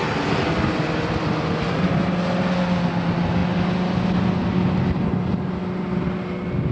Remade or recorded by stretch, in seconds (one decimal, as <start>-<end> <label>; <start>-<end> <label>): 0.0-6.7 recorded